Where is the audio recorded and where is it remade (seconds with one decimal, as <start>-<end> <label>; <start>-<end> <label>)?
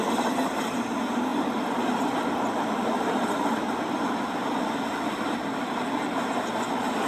0.0-7.1 recorded